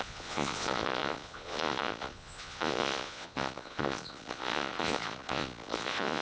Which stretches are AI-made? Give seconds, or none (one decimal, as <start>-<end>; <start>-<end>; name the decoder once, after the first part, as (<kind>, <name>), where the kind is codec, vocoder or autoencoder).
0.0-6.2 (vocoder, Vocos)